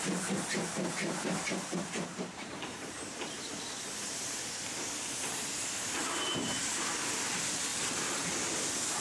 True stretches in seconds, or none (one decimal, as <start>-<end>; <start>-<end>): 0.0-1.0; 3.4-6.0; 6.8-7.7; 8.3-9.0